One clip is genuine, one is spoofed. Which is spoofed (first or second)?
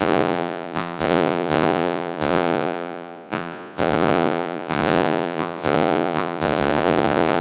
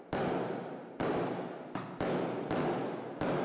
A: first